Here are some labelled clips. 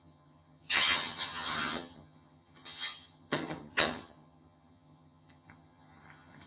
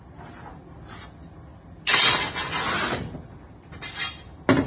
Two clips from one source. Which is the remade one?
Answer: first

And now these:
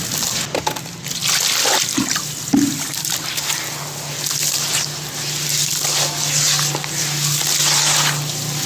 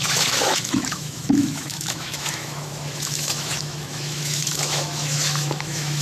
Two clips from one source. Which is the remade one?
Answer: second